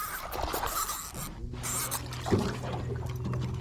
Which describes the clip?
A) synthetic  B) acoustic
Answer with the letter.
B